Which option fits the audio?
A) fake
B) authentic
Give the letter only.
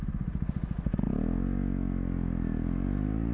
B